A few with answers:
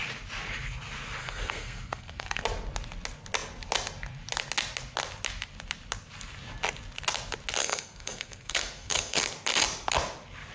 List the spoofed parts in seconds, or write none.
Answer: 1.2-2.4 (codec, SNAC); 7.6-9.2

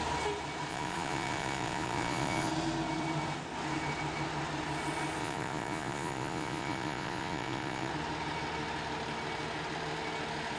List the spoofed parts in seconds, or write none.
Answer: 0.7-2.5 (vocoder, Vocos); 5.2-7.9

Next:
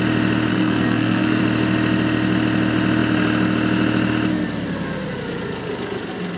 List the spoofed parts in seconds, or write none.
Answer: 0.5-1.4 (codec, SNAC)

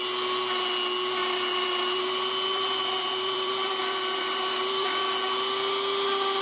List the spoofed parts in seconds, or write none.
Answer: 1.2-5.0 (vocoder, BigVGAN v2)